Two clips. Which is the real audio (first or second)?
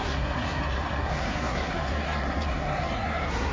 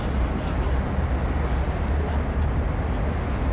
second